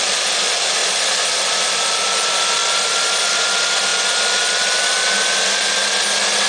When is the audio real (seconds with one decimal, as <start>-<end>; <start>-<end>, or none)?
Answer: 0.0-6.5

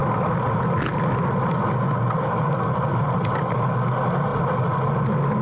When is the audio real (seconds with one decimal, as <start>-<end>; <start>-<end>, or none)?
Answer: 0.0-5.4

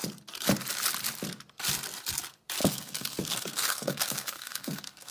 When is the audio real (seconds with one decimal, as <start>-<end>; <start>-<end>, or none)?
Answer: 0.0-2.6